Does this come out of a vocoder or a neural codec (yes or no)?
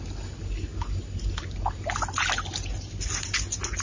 no